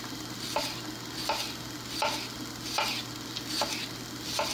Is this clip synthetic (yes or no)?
no